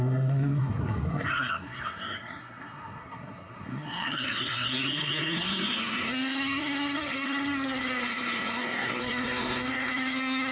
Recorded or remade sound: remade